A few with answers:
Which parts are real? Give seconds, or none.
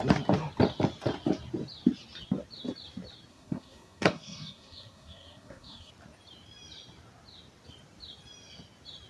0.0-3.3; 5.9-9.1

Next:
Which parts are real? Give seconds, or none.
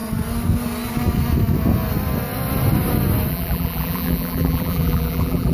0.0-3.3